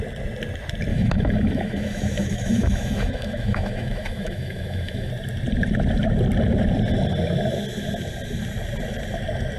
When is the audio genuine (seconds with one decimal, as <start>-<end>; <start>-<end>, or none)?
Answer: 0.0-0.9; 5.1-9.6

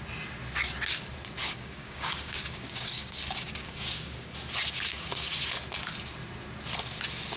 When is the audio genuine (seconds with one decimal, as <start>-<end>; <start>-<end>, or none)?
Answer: 0.0-1.4; 4.3-4.9; 5.4-7.4